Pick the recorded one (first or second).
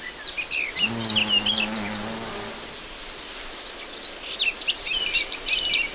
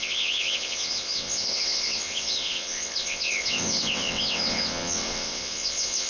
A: first